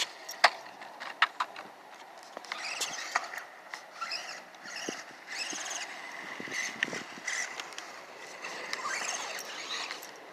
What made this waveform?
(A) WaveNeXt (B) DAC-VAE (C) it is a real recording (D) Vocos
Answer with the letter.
C